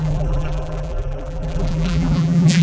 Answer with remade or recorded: remade